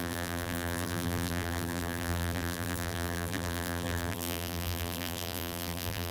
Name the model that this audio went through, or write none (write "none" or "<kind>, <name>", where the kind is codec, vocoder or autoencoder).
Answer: vocoder, BigVGAN v2